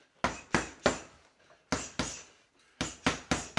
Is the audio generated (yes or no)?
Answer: no